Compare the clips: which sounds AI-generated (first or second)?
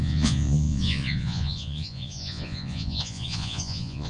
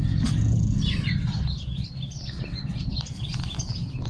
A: first